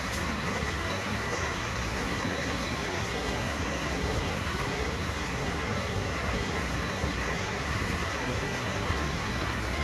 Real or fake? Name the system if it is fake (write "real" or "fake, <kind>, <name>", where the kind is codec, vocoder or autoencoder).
fake, codec, SNAC